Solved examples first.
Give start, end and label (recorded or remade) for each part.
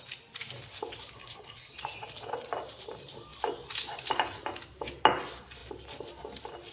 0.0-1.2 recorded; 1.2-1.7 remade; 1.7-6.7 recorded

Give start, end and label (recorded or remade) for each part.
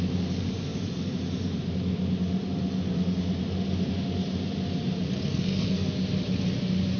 0.0-5.3 recorded; 5.3-5.9 remade; 5.9-7.0 recorded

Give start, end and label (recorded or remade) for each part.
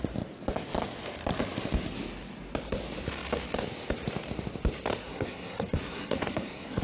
0.0-5.0 recorded; 5.0-6.8 remade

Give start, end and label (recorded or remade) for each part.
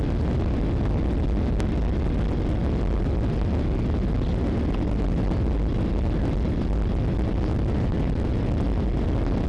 0.0-9.5 recorded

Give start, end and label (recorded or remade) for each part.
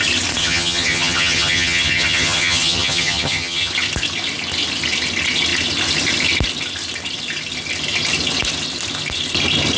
0.0-0.4 recorded; 0.4-3.7 remade; 3.7-9.8 recorded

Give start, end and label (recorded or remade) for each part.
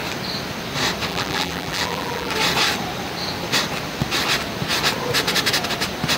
0.0-1.1 recorded; 1.1-2.3 remade; 2.3-6.2 recorded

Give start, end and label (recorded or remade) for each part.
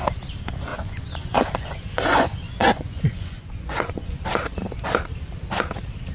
0.0-0.7 recorded; 0.7-4.2 remade; 4.2-6.1 recorded